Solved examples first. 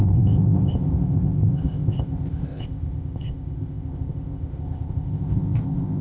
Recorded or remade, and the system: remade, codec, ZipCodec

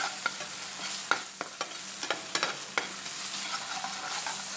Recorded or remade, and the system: recorded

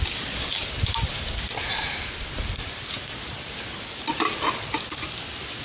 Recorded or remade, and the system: recorded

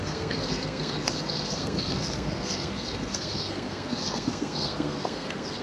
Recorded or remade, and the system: remade, codec, SNAC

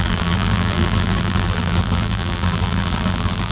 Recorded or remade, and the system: remade, vocoder, BigVGAN v2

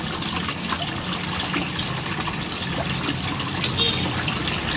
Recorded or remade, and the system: recorded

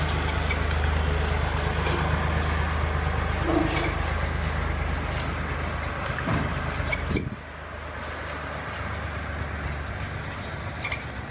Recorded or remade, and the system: recorded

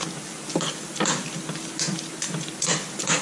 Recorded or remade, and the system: recorded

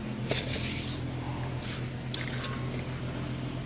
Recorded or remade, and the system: recorded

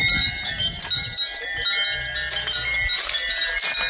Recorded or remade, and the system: recorded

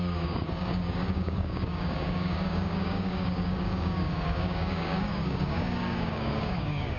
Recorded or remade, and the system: remade, codec, DAC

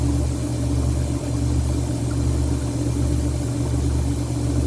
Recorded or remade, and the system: recorded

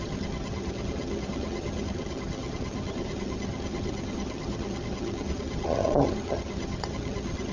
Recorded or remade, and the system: remade, vocoder, HiFi-GAN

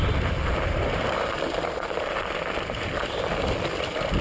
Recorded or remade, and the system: remade, vocoder, BigVGAN v2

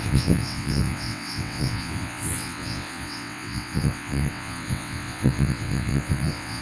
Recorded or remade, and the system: remade, vocoder, WaveNeXt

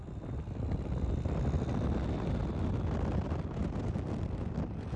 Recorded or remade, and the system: recorded